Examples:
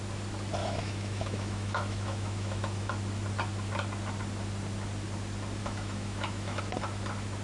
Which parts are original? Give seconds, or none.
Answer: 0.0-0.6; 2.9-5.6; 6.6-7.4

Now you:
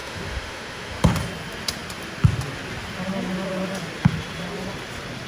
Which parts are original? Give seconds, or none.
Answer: 1.0-5.3

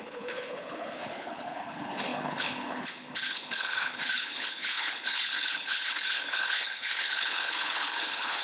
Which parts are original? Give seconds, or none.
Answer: none

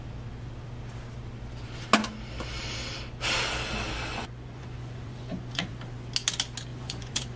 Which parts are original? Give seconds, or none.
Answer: 0.0-4.1; 5.7-6.7